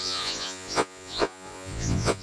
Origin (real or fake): fake